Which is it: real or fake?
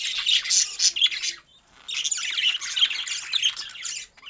real